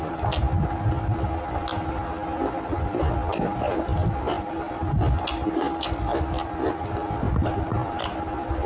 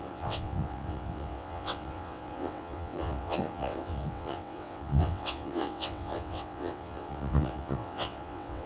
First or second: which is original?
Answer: first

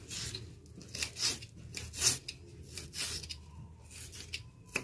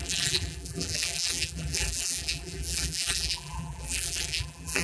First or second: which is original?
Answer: first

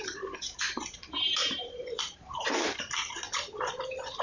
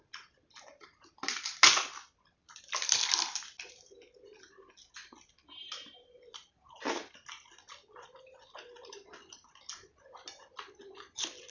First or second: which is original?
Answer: second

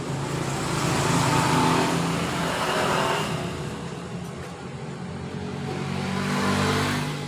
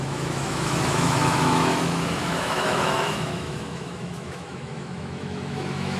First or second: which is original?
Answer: first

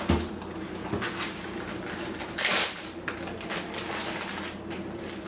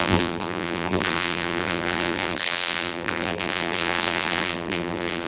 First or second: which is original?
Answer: first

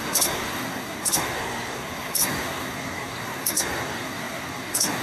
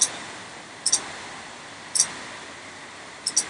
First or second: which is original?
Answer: second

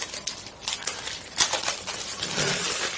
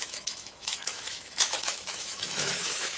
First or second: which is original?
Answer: first